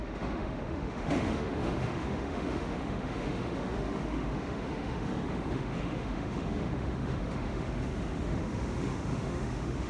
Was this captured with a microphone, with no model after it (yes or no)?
no